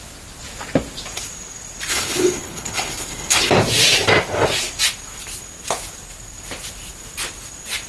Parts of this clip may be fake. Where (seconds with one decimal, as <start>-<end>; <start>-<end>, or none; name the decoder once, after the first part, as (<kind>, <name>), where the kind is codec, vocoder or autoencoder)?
1.9-3.5 (codec, HILCodec)